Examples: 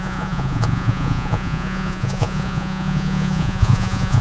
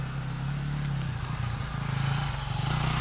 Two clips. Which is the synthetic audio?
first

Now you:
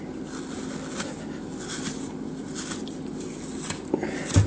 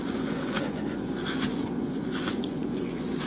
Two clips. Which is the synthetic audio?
second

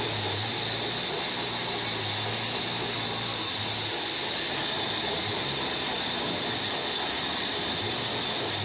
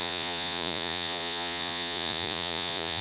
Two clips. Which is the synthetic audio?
second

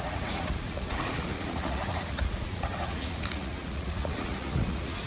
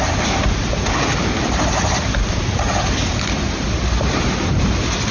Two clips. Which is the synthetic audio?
first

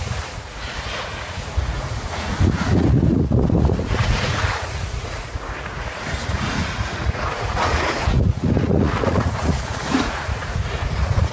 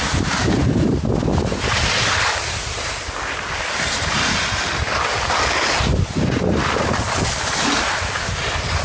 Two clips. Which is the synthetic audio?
first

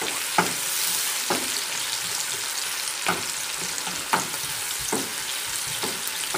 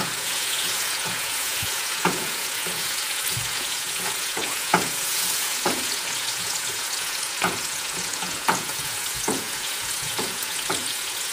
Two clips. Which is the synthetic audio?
second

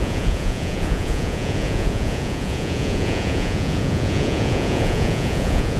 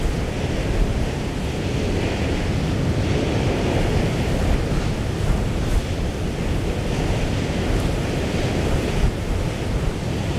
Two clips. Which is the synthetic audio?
first